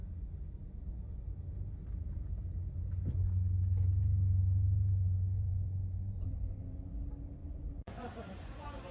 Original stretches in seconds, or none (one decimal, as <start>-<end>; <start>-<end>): 0.0-5.5; 7.0-7.4